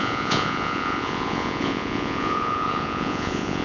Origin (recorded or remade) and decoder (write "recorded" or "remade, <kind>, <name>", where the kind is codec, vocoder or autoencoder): remade, vocoder, Vocos